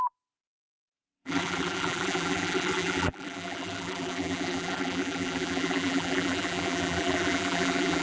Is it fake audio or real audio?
fake